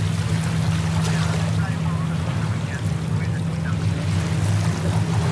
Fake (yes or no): no